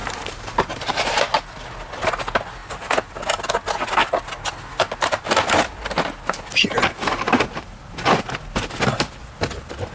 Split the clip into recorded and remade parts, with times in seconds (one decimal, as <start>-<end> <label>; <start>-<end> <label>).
0.0-1.2 remade; 1.2-9.9 recorded